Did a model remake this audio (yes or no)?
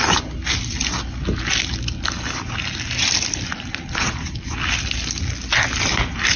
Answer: no